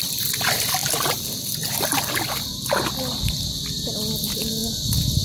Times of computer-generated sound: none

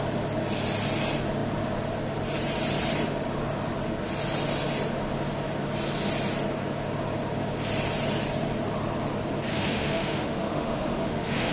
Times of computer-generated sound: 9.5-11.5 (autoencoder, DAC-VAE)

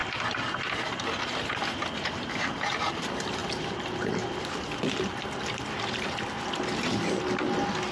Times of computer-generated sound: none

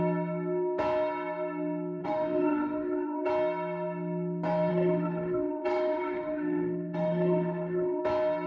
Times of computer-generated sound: 2.0-3.3 (autoencoder, DAC-VAE); 4.7-8.0

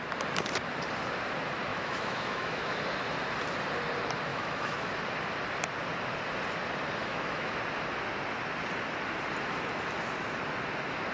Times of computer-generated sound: 1.7-2.8 (autoencoder, DAC-VAE); 4.3-4.9; 7.0-7.5